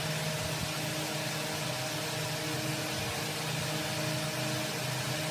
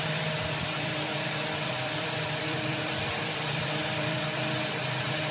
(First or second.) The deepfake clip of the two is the second